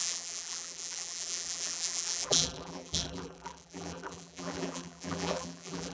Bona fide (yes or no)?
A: no